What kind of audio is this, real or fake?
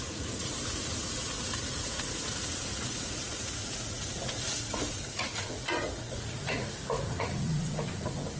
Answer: fake